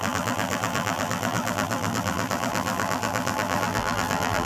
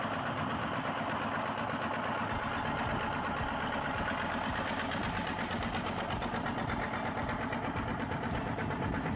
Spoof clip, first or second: first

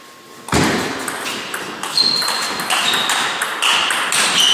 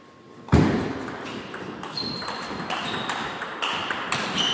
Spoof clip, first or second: second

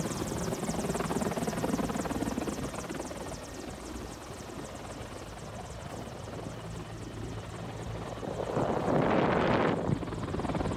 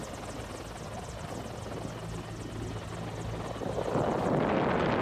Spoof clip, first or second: first